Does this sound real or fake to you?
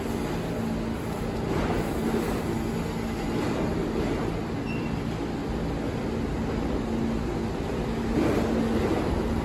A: real